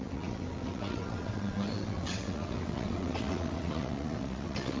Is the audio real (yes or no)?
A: no